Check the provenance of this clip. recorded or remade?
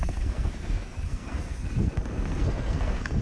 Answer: remade